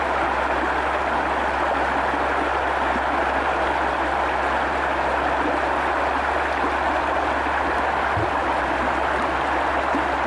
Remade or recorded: remade